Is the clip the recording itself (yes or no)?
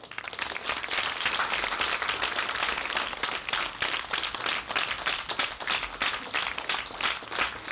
yes